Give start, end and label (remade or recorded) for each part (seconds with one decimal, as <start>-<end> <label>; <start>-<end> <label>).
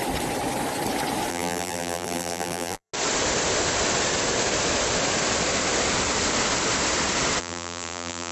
0.0-1.3 recorded; 1.3-2.9 remade; 2.9-7.4 recorded; 7.4-8.3 remade